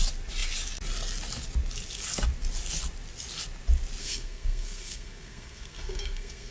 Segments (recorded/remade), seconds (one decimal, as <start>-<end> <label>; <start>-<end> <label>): 0.0-4.0 recorded; 4.0-6.5 remade